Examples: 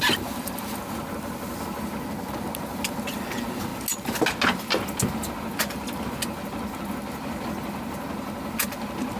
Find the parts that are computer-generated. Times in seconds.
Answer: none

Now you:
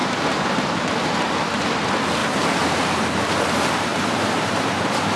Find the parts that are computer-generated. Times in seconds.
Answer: 2.2-3.4 (vocoder, BigVGAN v2); 3.9-5.2